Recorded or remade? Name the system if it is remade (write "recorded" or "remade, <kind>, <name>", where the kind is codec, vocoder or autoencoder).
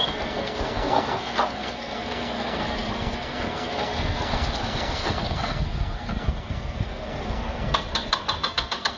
remade, codec, SNAC